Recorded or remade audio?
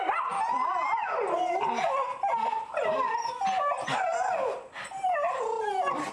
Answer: recorded